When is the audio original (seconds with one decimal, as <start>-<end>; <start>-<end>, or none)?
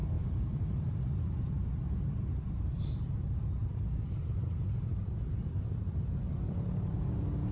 none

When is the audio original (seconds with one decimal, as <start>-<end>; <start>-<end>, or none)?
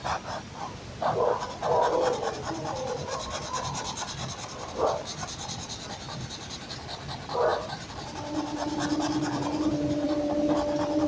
1.4-7.5; 10.3-11.1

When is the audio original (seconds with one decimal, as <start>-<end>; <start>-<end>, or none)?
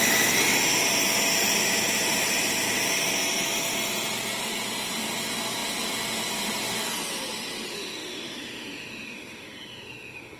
0.0-7.7